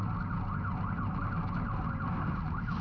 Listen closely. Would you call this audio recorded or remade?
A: recorded